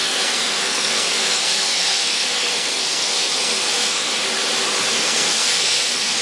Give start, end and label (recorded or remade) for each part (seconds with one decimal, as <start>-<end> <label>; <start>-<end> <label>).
0.0-4.1 remade; 4.1-4.9 recorded; 4.9-6.2 remade